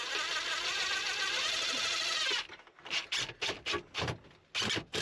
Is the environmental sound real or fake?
real